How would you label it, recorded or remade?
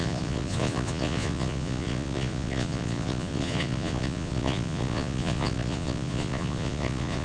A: remade